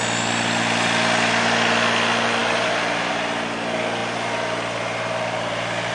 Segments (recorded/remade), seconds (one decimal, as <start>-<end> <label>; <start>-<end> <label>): 0.0-5.9 recorded